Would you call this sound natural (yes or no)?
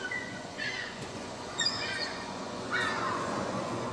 no